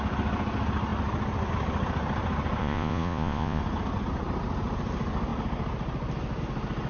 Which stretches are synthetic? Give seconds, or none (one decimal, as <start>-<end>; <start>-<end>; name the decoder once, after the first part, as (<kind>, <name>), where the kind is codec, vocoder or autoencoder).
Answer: 2.6-3.6 (vocoder, Vocos)